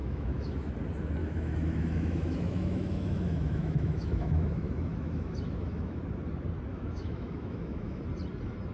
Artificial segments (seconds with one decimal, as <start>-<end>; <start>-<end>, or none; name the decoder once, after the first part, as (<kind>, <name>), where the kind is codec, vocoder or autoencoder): 0.0-0.7 (autoencoder, DAC-VAE); 1.2-6.0; 6.7-8.0